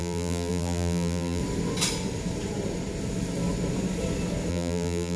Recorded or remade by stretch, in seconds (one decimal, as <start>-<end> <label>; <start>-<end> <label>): 0.0-1.4 remade; 1.4-4.5 recorded; 4.5-5.2 remade